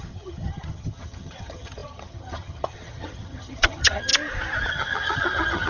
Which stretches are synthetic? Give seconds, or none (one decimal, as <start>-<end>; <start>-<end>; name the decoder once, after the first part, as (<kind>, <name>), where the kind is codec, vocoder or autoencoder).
0.0-4.1 (vocoder, HiFi-GAN); 4.7-5.7